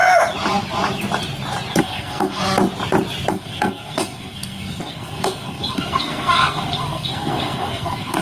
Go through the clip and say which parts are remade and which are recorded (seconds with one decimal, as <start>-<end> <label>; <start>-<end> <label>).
0.0-1.8 recorded; 1.8-2.4 remade; 2.4-3.3 recorded; 3.3-8.2 remade